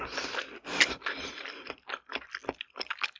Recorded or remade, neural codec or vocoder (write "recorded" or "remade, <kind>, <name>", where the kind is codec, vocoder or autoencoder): recorded